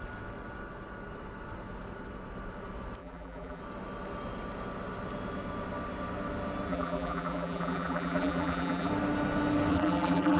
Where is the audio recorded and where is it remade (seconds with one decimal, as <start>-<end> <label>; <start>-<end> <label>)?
0.0-3.0 recorded; 3.0-3.6 remade; 3.6-6.7 recorded; 6.7-8.9 remade; 8.9-9.7 recorded; 9.7-10.4 remade